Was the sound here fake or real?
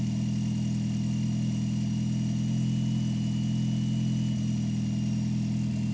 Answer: real